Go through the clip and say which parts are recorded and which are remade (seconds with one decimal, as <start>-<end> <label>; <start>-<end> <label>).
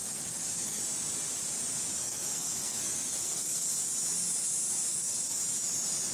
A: 0.0-0.8 remade; 0.8-2.0 recorded; 2.0-3.7 remade; 3.7-4.9 recorded; 4.9-5.4 remade; 5.4-6.1 recorded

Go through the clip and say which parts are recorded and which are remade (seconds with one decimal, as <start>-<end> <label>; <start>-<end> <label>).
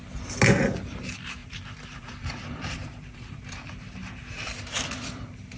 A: 0.0-1.4 recorded; 1.4-3.4 remade; 3.4-5.6 recorded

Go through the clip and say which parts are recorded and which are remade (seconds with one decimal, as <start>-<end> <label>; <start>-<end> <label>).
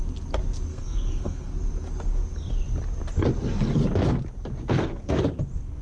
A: 0.0-0.7 recorded; 0.7-1.5 remade; 1.5-4.7 recorded; 4.7-5.2 remade; 5.2-5.8 recorded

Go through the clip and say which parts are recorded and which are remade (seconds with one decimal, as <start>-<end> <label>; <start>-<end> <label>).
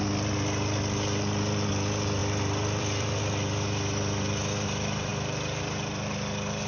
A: 0.0-2.2 recorded; 2.2-3.2 remade; 3.2-5.1 recorded; 5.1-5.6 remade; 5.6-6.7 recorded